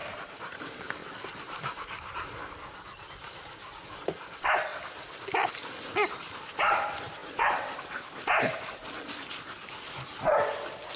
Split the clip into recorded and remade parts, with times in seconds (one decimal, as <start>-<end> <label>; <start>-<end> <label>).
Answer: 0.0-11.0 recorded